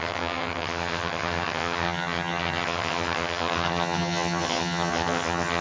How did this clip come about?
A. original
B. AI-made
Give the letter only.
B